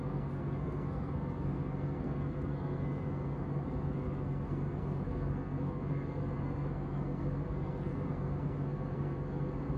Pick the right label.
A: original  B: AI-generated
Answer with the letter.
B